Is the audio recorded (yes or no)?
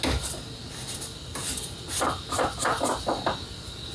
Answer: yes